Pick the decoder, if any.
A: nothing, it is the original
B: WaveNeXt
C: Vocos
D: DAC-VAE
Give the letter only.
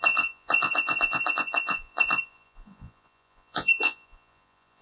C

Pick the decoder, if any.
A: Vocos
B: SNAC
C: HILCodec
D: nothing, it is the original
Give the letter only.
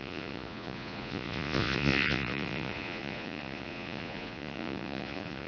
A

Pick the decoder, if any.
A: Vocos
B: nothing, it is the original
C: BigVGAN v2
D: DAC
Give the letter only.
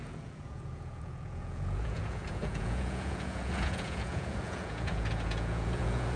A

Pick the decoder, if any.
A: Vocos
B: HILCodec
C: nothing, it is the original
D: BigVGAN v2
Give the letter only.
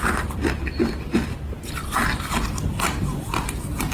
C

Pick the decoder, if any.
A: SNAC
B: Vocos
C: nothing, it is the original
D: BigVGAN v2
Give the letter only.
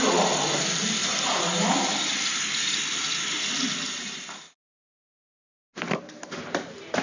C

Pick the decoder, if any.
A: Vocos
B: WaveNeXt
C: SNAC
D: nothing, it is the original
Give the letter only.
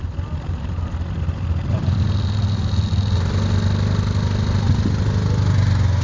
D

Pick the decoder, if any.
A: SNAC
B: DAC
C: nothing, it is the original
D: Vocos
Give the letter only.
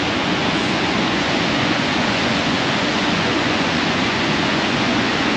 D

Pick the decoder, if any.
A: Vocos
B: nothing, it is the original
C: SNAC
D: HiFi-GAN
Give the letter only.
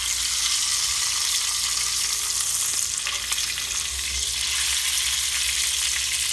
B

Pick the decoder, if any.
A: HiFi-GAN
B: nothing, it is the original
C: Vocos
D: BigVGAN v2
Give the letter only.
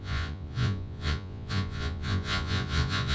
C